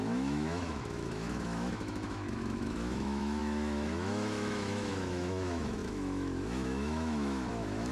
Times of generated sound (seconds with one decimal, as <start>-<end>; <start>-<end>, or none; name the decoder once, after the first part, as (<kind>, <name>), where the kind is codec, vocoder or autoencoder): 0.0-7.9 (autoencoder, DAC-VAE)